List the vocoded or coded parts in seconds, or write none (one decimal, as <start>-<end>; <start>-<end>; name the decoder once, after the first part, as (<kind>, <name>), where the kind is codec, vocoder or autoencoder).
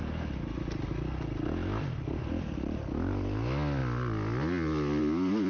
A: none